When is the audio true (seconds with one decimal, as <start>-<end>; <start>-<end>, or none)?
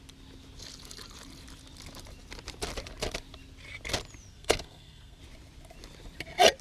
0.0-4.3; 5.2-6.6